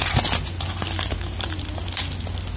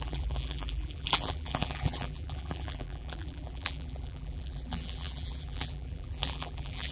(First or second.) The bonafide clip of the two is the first